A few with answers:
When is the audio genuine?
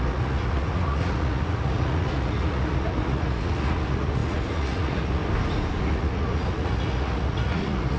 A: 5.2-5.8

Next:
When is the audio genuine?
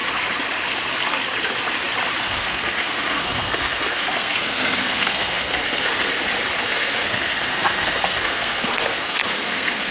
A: 0.0-2.2; 6.1-6.6